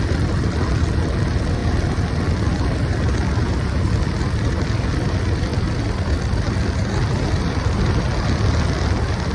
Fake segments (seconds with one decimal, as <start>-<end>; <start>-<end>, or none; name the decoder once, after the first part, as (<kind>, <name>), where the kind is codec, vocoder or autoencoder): 5.5-7.1 (vocoder, BigVGAN v2)